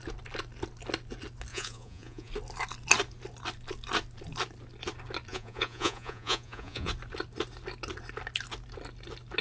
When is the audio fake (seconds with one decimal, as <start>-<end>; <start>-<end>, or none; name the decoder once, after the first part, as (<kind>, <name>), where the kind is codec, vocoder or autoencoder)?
1.5-2.3 (vocoder, Vocos); 5.3-6.9